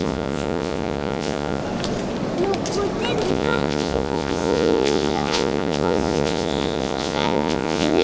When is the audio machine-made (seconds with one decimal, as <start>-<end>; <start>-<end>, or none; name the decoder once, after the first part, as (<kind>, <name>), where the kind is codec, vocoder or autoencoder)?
0.0-1.6 (vocoder, Vocos); 3.3-8.0